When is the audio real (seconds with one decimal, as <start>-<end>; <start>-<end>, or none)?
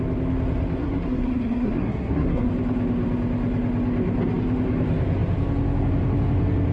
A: 0.0-0.8; 2.5-6.7